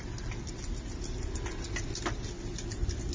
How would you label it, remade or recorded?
recorded